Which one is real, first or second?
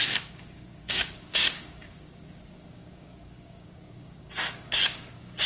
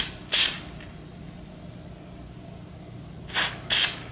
second